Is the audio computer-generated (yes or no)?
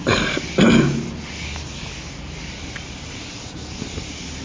no